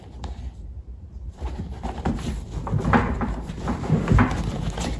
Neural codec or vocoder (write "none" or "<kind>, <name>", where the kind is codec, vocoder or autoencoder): none